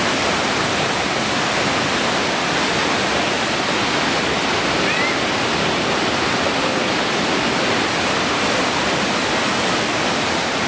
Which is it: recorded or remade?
recorded